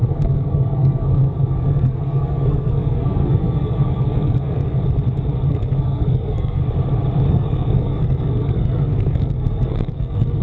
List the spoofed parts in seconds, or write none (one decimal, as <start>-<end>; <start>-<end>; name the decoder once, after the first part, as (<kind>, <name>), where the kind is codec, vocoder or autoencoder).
0.0-4.8 (codec, SNAC); 5.5-6.6; 7.3-10.4